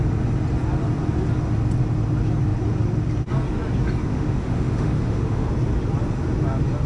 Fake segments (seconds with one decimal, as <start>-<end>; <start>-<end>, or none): 4.1-5.5